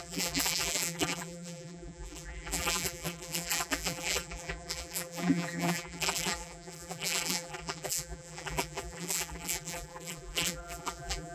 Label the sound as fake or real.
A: fake